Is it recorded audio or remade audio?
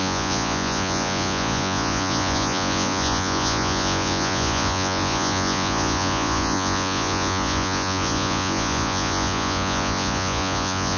remade